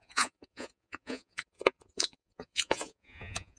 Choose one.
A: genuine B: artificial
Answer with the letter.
B